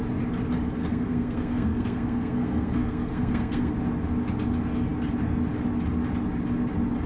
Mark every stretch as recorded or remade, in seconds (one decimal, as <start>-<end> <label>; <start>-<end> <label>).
0.0-0.8 recorded; 0.8-3.7 remade; 3.7-7.1 recorded